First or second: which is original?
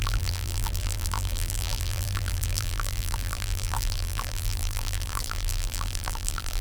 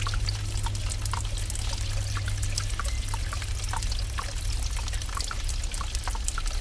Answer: second